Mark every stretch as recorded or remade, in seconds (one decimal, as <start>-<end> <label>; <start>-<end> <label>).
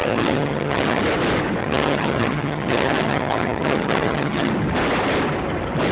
0.0-1.0 remade; 1.0-1.6 recorded; 1.6-4.5 remade; 4.5-5.9 recorded